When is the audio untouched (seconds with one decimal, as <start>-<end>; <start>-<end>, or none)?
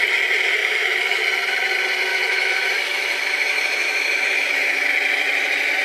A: 0.0-0.6; 1.2-2.1; 4.9-5.8